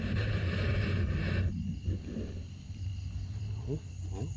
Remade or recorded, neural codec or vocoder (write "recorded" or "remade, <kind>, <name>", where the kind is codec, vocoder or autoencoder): recorded